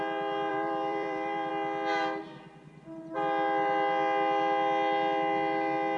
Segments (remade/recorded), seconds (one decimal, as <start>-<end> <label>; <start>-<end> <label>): 0.0-0.5 recorded; 0.5-1.5 remade; 1.5-6.0 recorded